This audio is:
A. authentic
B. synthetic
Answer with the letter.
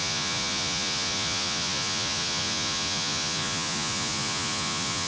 B